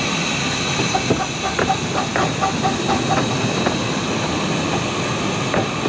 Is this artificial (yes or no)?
no